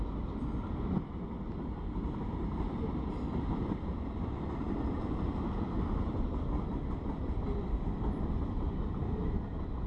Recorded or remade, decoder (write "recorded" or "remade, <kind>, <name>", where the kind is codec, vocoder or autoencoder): remade, vocoder, BigVGAN v2